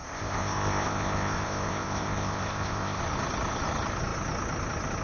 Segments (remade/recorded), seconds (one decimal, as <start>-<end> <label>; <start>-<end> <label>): 0.0-3.0 remade; 3.0-5.0 recorded